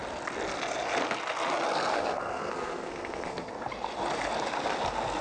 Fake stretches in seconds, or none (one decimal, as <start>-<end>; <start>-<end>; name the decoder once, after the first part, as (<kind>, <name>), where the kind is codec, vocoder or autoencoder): 1.9-3.5 (codec, SNAC)